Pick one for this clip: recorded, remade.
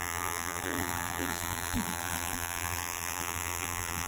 remade